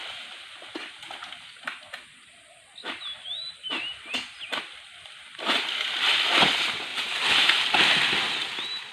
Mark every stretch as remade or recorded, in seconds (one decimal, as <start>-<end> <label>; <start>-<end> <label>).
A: 0.0-6.9 recorded; 6.9-7.9 remade; 7.9-8.9 recorded